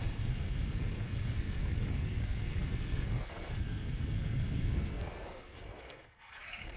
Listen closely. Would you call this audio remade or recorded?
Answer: remade